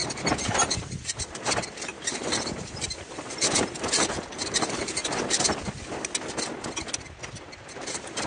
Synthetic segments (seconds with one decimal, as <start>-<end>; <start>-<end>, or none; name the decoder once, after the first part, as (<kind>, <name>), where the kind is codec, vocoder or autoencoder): 0.0-5.0 (vocoder, BigVGAN v2); 7.3-8.3